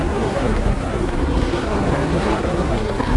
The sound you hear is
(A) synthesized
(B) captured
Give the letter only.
A